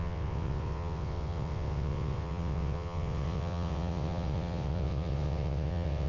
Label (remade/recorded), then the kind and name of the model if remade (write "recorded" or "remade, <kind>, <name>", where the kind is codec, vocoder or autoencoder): remade, vocoder, WaveNeXt